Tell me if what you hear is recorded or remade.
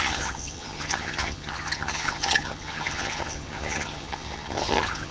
remade